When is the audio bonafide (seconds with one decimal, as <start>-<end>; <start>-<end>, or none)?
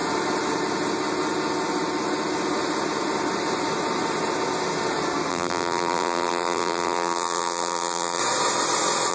0.0-5.3; 8.2-9.1